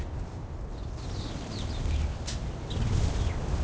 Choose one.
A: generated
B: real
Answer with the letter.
B